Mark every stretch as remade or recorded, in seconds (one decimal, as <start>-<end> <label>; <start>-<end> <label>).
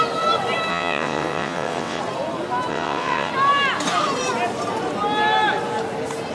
0.0-0.7 recorded; 0.7-2.0 remade; 2.0-2.7 recorded; 2.7-3.3 remade; 3.3-6.3 recorded